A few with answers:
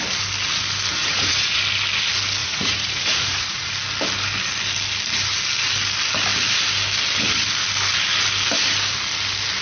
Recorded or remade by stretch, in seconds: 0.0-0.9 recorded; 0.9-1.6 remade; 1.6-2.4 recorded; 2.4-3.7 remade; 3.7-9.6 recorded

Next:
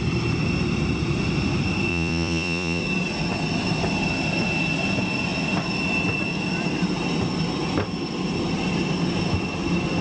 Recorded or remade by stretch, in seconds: 0.0-1.9 recorded; 1.9-2.8 remade; 2.8-10.0 recorded

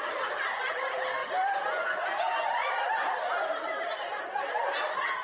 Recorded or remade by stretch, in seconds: 0.0-5.2 recorded